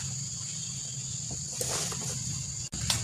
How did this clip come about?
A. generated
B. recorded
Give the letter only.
B